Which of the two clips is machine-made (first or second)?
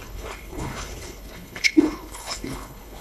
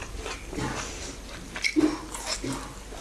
first